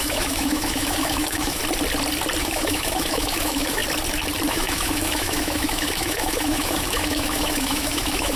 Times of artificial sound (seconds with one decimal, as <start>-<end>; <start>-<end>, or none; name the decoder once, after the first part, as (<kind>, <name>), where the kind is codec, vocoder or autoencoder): 0.0-1.6 (autoencoder, DAC-VAE); 2.4-3.8; 4.5-8.4